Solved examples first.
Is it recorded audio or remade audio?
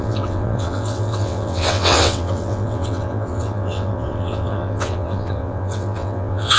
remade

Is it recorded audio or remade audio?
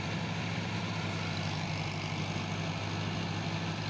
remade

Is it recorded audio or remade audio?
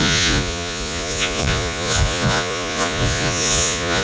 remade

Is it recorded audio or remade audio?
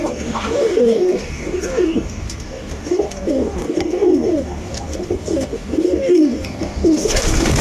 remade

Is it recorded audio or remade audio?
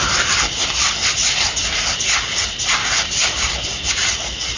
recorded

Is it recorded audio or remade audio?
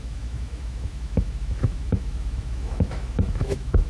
remade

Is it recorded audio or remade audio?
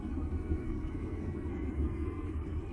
remade